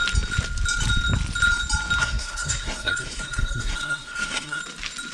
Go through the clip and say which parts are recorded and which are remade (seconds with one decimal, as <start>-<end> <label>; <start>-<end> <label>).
0.0-2.0 recorded; 2.0-4.6 remade; 4.6-5.1 recorded

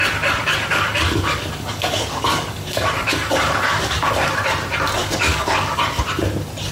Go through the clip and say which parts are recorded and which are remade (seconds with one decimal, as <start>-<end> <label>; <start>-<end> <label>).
0.0-0.4 recorded; 0.4-4.3 remade; 4.3-5.0 recorded; 5.0-5.8 remade; 5.8-6.7 recorded

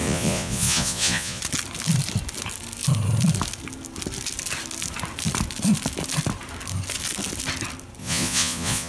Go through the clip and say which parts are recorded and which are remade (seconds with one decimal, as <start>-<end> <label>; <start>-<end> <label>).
0.0-1.4 remade; 1.4-8.0 recorded; 8.0-8.9 remade

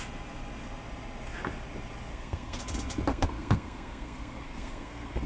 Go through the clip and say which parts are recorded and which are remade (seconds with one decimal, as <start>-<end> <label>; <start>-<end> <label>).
0.0-2.1 recorded; 2.1-2.6 remade; 2.6-3.1 recorded; 3.1-5.3 remade

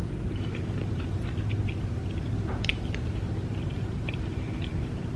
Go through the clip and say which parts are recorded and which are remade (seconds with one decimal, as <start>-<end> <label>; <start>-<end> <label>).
0.0-0.9 recorded; 0.9-2.7 remade; 2.7-3.3 recorded; 3.3-5.2 remade